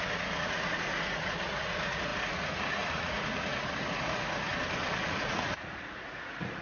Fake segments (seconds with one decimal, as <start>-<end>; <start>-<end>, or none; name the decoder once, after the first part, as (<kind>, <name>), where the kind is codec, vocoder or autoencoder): 0.0-4.5 (vocoder, Vocos); 5.0-6.6